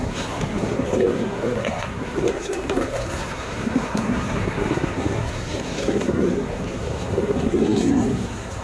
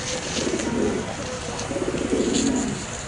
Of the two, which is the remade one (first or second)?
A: first